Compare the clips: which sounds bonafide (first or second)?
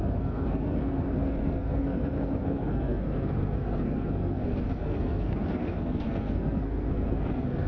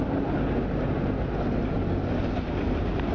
second